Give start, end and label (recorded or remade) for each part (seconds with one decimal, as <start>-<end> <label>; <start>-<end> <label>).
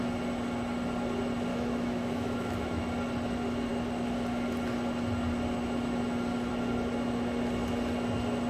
0.0-1.5 recorded; 1.5-2.8 remade; 2.8-8.5 recorded